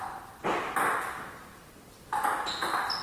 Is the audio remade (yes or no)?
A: no